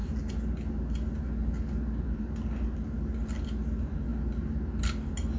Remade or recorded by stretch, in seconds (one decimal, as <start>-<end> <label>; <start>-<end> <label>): 0.0-5.4 recorded